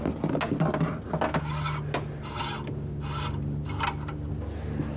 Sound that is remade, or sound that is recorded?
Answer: recorded